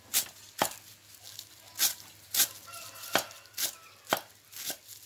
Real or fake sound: real